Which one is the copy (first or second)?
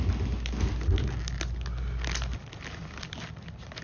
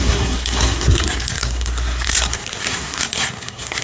second